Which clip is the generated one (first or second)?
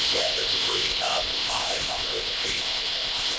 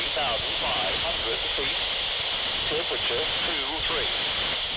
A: first